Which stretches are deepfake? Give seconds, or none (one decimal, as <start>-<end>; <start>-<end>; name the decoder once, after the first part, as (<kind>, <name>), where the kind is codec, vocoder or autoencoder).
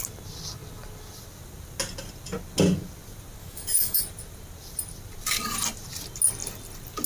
3.4-4.0 (autoencoder, DAC-VAE)